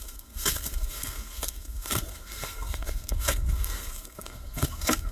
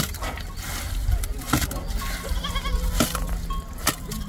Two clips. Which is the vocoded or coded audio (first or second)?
first